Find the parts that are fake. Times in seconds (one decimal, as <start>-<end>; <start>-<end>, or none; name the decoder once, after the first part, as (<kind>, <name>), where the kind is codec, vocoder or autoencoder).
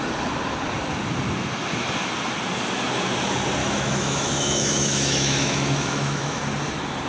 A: 3.6-6.4 (autoencoder, DAC-VAE)